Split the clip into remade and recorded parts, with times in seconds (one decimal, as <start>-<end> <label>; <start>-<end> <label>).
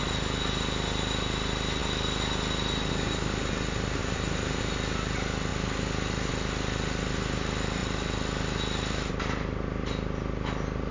0.0-4.0 recorded; 4.0-4.6 remade; 4.6-10.9 recorded